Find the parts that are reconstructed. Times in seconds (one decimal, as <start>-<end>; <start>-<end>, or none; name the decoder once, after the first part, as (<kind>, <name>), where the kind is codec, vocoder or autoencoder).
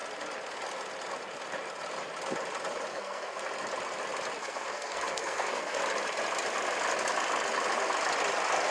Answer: 2.9-3.4 (codec, SNAC); 4.4-5.8